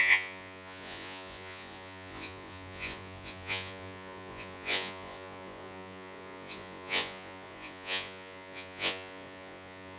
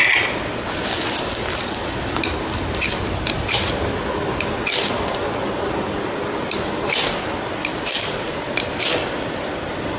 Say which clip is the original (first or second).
second